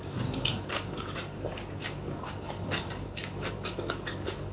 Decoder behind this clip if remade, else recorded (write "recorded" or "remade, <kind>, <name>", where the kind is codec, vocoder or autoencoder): remade, codec, DAC